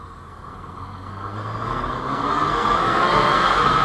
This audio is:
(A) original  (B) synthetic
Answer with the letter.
B